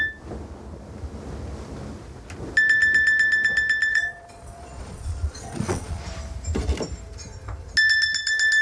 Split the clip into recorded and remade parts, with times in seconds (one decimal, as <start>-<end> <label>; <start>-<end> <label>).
0.0-3.9 recorded; 3.9-6.0 remade; 6.0-8.6 recorded